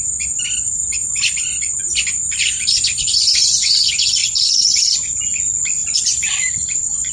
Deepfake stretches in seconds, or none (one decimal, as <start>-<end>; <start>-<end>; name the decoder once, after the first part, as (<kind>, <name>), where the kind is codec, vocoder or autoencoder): 5.8-7.1 (vocoder, BigVGAN v2)